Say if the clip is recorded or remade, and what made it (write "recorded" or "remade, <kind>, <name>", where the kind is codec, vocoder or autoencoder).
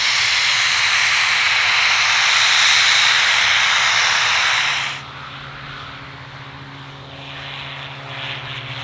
recorded